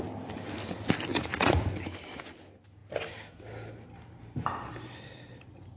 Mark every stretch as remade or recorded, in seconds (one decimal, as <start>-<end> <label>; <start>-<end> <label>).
0.0-1.1 recorded; 1.1-1.6 remade; 1.6-5.8 recorded